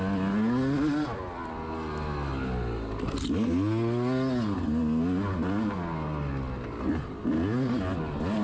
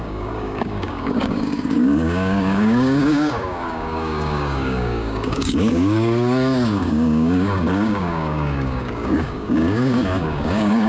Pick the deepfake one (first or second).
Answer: second